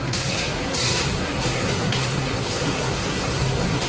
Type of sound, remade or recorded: remade